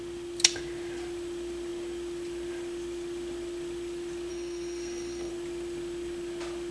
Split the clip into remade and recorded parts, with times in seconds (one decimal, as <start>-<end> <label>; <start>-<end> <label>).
0.0-4.3 recorded; 4.3-5.3 remade; 5.3-6.7 recorded